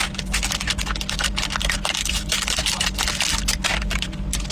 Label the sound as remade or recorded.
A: recorded